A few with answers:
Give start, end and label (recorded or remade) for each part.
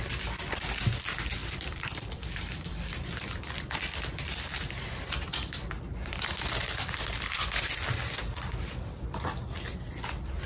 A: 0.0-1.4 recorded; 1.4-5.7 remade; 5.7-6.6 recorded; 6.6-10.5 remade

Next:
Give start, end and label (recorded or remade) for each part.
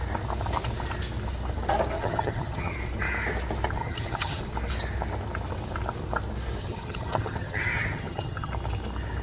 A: 0.0-2.0 recorded; 2.0-2.7 remade; 2.7-3.8 recorded; 3.8-4.4 remade; 4.4-6.6 recorded; 6.6-8.5 remade; 8.5-9.2 recorded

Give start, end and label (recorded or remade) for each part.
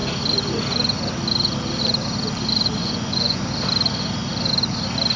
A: 0.0-2.8 recorded; 2.8-3.4 remade; 3.4-5.2 recorded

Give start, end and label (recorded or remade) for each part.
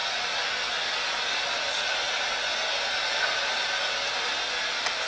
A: 0.0-5.1 recorded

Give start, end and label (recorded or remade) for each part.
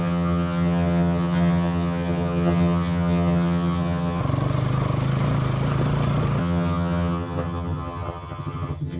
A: 0.0-4.2 remade; 4.2-6.4 recorded; 6.4-9.0 remade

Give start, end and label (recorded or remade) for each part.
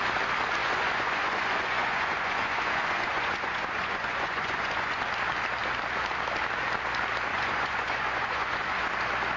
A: 0.0-0.6 recorded; 0.6-5.0 remade; 5.0-7.3 recorded; 7.3-8.9 remade; 8.9-9.4 recorded